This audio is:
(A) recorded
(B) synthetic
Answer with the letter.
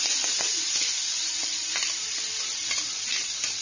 A